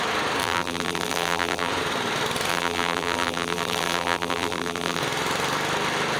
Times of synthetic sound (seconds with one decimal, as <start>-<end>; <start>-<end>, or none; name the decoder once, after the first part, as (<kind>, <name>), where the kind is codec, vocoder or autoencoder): 0.4-1.7 (vocoder, BigVGAN v2); 2.5-5.0